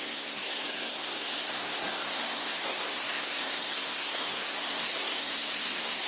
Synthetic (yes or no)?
yes